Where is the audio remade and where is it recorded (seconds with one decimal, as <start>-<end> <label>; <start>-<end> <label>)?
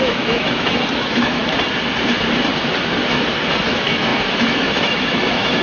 0.0-1.4 remade; 1.4-3.6 recorded; 3.6-5.6 remade